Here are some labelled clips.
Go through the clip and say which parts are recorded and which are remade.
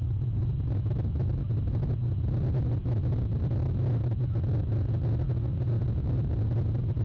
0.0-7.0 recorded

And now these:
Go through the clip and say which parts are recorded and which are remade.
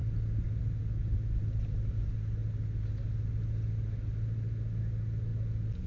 0.0-5.9 recorded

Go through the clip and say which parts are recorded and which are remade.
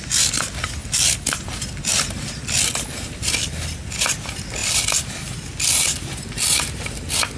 0.0-7.4 recorded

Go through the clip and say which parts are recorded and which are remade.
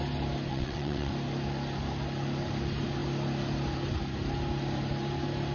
0.0-0.5 recorded; 0.5-1.1 remade; 1.1-5.5 recorded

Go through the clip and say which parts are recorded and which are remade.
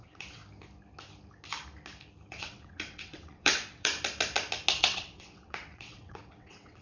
0.0-0.4 remade; 0.4-2.3 recorded; 2.3-3.9 remade; 3.9-4.8 recorded; 4.8-6.8 remade